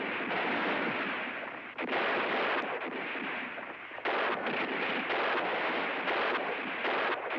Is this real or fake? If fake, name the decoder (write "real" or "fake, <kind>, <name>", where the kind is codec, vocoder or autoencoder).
real